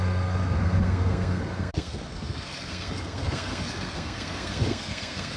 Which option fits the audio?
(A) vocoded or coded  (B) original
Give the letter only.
A